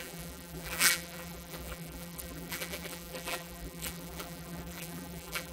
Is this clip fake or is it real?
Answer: fake